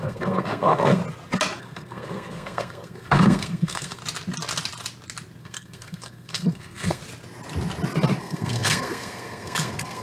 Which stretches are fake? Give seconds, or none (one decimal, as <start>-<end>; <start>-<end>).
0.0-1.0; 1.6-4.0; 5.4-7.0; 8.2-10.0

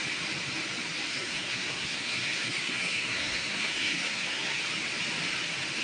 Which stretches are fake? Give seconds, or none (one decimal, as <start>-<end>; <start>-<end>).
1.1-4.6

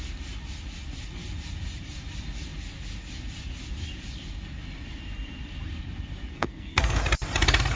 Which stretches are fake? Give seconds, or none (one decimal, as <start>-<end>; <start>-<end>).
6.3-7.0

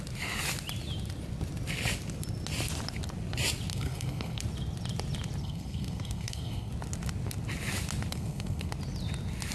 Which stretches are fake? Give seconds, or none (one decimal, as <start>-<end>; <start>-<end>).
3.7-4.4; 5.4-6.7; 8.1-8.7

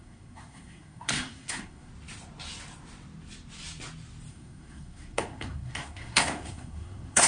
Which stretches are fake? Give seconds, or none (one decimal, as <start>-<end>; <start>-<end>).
0.0-1.9; 4.3-7.3